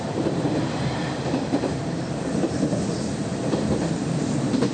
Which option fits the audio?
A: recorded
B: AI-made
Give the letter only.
B